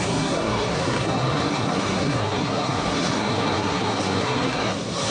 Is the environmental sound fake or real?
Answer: fake